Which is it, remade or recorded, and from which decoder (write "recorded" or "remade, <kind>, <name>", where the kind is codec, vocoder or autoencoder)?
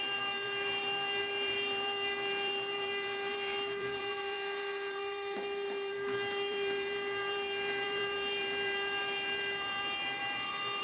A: remade, vocoder, BigVGAN v2